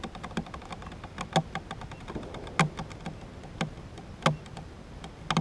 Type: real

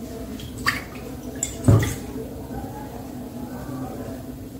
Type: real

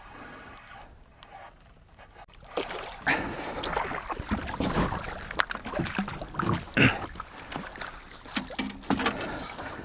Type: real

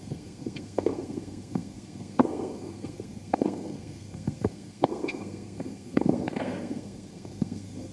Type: fake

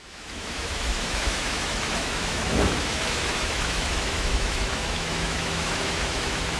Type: fake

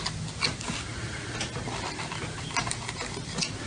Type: real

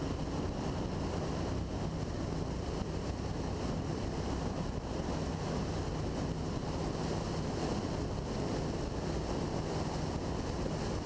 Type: real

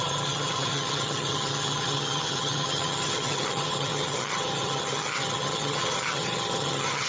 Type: fake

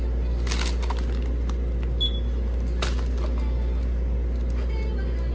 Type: real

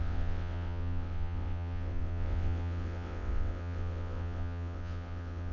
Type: fake